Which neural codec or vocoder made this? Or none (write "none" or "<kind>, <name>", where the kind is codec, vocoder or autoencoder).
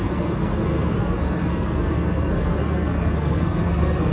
codec, SNAC